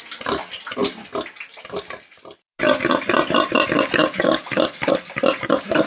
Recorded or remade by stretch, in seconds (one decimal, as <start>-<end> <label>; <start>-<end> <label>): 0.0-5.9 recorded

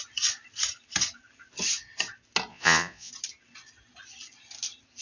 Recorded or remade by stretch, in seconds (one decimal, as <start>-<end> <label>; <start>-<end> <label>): 0.0-2.5 recorded; 2.5-3.1 remade; 3.1-5.0 recorded

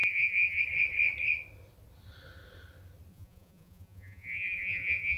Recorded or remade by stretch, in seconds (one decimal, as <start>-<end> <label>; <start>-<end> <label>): 0.0-0.6 remade; 0.6-3.1 recorded; 3.1-5.2 remade

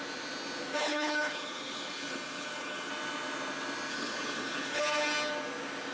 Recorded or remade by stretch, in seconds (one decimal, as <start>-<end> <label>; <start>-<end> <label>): 0.0-0.8 recorded; 0.8-2.9 remade; 2.9-3.9 recorded; 3.9-4.8 remade; 4.8-5.9 recorded